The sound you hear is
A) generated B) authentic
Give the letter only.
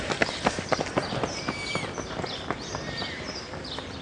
B